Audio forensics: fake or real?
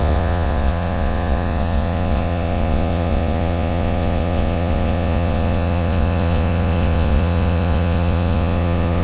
fake